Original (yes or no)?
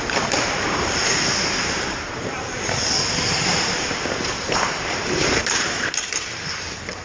no